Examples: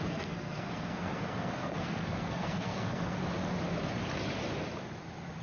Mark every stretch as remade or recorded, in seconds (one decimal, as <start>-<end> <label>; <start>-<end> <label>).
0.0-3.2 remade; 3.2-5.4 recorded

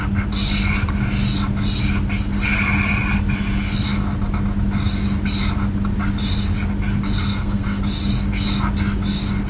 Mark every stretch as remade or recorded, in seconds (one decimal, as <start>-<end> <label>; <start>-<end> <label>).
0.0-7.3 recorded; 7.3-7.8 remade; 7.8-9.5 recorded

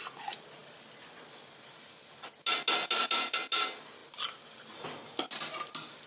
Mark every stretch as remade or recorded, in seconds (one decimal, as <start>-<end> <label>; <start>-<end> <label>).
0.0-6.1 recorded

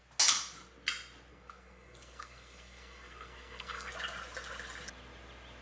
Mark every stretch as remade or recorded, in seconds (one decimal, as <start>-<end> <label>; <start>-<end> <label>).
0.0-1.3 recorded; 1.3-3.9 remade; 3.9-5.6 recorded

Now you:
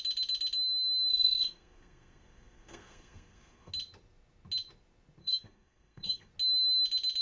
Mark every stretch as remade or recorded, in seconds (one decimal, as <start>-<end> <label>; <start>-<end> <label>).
0.0-1.1 recorded; 1.1-3.7 remade; 3.7-5.2 recorded; 5.2-6.3 remade; 6.3-7.2 recorded

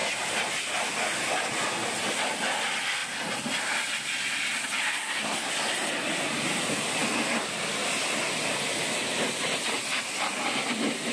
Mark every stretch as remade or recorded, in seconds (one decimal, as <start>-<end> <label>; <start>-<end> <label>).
0.0-4.9 recorded; 4.9-5.5 remade; 5.5-11.1 recorded

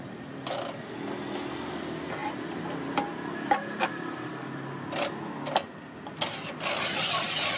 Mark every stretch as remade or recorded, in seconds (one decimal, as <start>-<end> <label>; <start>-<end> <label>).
0.0-7.6 recorded